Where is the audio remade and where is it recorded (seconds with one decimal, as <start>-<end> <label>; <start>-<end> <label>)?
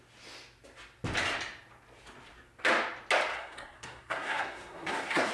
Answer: 0.0-3.3 recorded; 3.3-5.3 remade